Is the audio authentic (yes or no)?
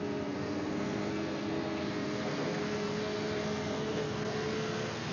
no